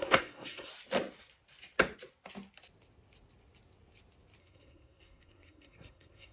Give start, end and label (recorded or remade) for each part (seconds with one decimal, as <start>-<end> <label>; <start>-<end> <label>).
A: 0.0-0.7 remade; 0.7-4.4 recorded; 4.4-6.3 remade